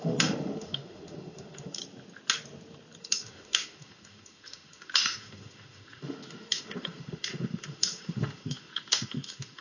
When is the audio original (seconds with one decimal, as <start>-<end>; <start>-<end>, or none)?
1.8-3.0